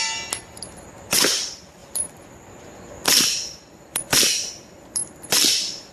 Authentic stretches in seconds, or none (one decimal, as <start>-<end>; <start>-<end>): 0.0-5.9